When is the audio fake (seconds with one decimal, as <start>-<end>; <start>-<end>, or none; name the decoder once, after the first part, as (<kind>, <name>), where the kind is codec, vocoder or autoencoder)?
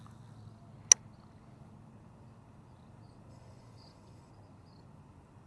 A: 3.3-4.3 (vocoder, Vocos)